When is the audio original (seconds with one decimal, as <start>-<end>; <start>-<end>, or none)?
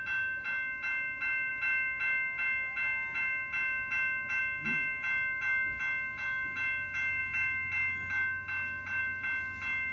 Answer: 0.0-9.9